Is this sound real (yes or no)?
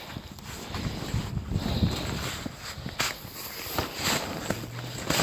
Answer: yes